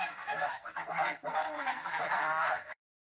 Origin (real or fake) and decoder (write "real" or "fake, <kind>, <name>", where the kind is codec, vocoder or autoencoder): fake, codec, SNAC